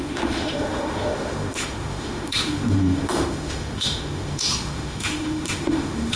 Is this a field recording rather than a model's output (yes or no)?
no